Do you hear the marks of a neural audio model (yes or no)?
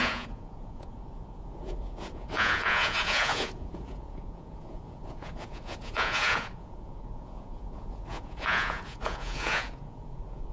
yes